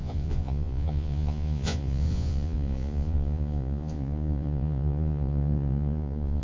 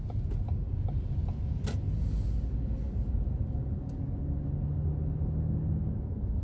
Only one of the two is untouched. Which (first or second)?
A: second